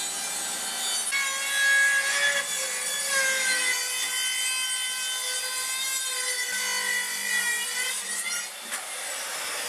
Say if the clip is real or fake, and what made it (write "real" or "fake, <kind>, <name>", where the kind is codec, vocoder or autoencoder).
real